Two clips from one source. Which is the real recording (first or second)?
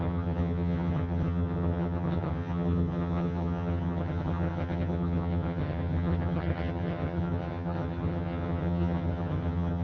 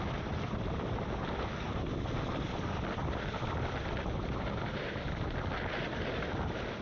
second